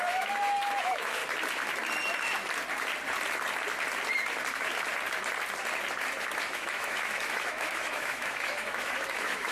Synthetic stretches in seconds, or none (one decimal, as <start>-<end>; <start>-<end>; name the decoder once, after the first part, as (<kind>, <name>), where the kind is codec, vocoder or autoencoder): 0.0-1.2 (autoencoder, DAC-VAE); 6.4-9.5